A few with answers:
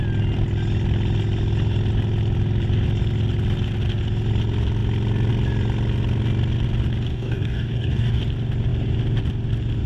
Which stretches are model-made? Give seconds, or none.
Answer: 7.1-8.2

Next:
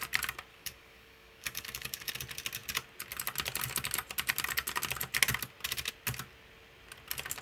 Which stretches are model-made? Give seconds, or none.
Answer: 0.5-2.1

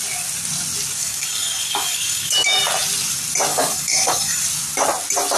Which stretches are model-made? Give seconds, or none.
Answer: 1.0-2.6; 3.5-4.4

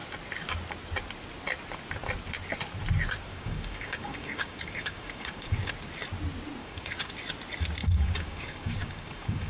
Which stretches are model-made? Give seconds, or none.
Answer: 3.3-5.7; 6.6-7.1; 7.8-9.5

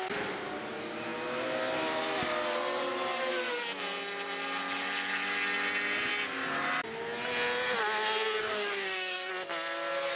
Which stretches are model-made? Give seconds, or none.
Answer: 8.4-9.3

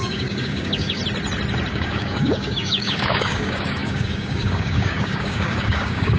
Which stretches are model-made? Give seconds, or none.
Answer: 0.0-1.0; 1.7-6.2

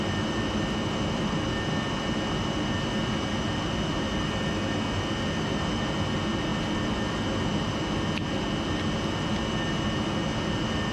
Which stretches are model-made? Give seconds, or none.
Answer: none

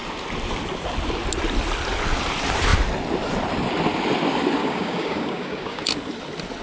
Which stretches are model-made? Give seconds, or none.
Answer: 4.6-5.8